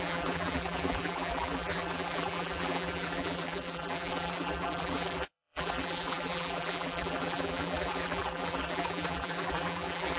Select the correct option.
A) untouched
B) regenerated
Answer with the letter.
B